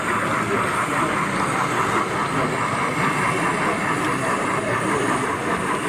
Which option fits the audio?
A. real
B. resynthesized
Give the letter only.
A